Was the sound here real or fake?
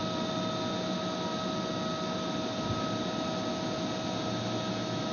real